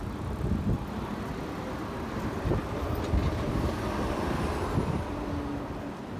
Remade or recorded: recorded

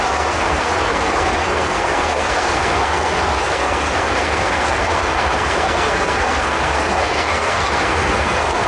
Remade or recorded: remade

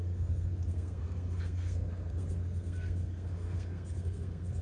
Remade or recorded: remade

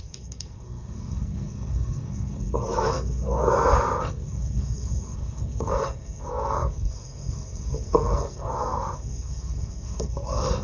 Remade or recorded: remade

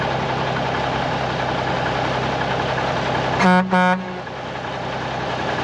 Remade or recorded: recorded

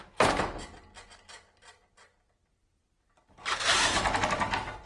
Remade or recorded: recorded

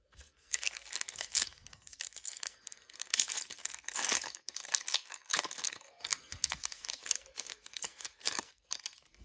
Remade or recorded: remade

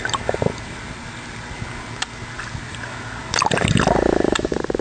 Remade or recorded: recorded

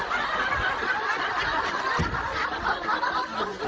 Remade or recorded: recorded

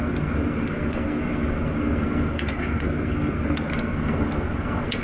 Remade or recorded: remade